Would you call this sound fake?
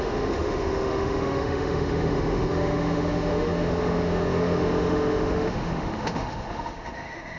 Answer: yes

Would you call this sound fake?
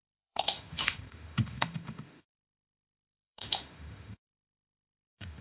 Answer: yes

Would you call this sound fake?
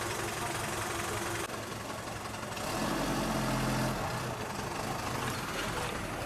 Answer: no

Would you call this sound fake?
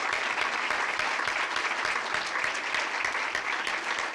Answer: no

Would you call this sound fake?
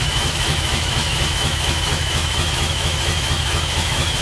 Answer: yes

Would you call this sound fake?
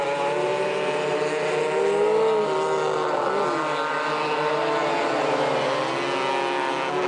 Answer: no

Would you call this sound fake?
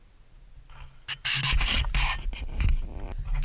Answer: no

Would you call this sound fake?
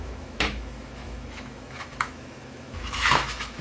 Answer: yes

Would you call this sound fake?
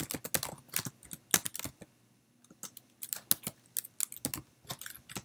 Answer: no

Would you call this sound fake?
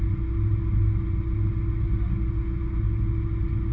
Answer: no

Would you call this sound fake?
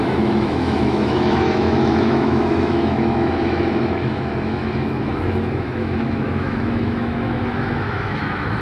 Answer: yes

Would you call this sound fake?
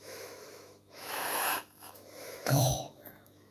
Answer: yes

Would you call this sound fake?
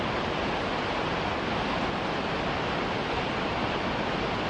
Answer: no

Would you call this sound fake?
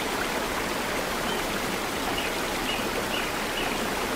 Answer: no